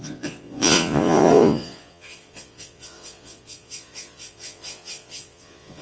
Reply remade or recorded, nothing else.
remade